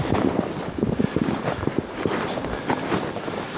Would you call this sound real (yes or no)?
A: yes